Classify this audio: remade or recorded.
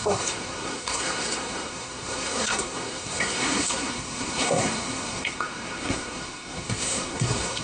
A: remade